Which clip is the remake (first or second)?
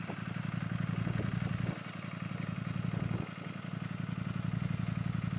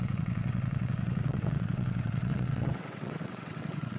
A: second